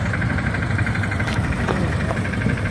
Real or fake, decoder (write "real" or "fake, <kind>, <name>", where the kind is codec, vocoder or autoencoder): fake, vocoder, BigVGAN v2